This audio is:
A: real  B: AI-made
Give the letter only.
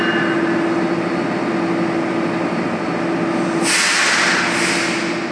A